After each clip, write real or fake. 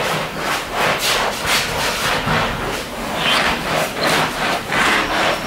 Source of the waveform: real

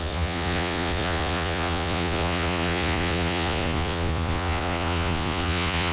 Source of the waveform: fake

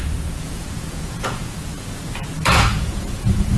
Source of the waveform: fake